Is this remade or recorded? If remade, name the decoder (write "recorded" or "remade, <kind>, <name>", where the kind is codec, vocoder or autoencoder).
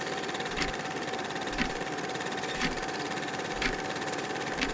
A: remade, vocoder, BigVGAN v2